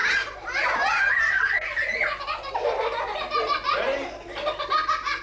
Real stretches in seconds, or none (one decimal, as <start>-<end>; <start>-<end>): 0.0-5.2